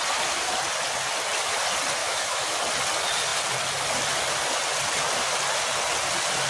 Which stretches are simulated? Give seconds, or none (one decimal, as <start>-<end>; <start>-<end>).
2.0-2.6